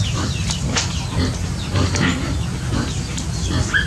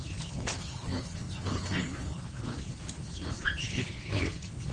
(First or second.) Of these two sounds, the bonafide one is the first